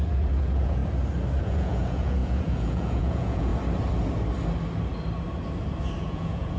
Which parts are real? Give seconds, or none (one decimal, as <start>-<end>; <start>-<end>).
0.8-1.4; 3.5-6.0